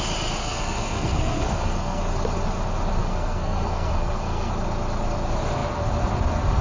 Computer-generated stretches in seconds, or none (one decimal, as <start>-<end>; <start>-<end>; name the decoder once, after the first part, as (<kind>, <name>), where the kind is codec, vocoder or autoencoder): 0.4-2.0 (codec, SNAC); 3.0-4.5